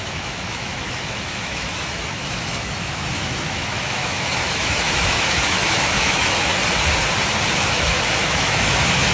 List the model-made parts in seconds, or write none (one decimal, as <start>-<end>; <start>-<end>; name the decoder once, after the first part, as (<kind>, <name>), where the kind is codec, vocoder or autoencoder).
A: 0.0-6.5 (autoencoder, DAC-VAE); 7.5-9.1